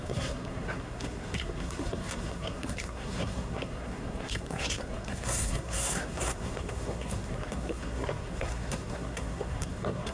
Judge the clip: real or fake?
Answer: fake